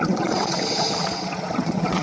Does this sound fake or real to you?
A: fake